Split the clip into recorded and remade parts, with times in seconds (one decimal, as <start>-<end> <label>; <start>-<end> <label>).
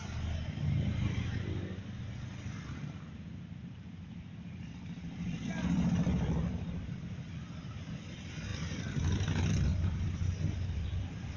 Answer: 0.0-3.6 recorded; 3.6-8.0 remade; 8.0-8.5 recorded; 8.5-9.5 remade; 9.5-11.4 recorded